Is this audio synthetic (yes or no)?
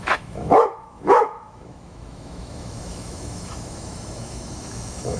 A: yes